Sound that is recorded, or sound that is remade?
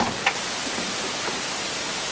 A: recorded